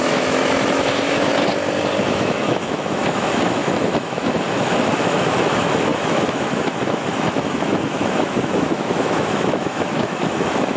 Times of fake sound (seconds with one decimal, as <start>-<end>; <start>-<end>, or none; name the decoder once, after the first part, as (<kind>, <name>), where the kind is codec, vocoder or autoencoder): 0.0-1.3 (autoencoder, DAC-VAE); 2.1-10.8